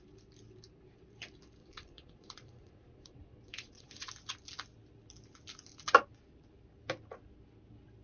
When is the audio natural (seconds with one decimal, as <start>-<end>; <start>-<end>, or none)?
0.0-1.6; 4.1-8.0